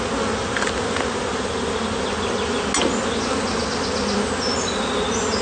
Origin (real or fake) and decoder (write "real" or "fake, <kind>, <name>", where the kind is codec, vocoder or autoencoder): real